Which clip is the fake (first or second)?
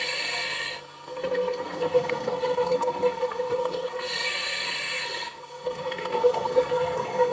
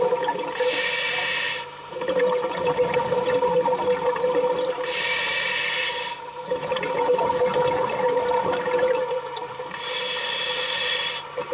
first